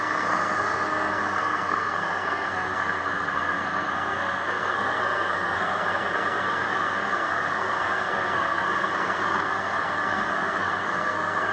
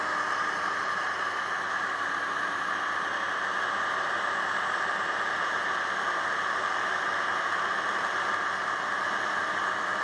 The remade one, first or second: first